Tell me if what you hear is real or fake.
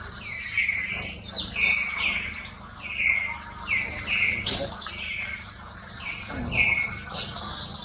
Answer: real